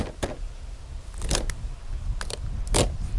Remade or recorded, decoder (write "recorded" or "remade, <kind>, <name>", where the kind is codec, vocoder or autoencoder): recorded